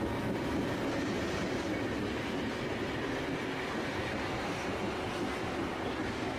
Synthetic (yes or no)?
no